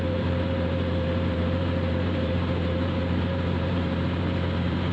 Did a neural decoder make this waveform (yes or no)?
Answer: yes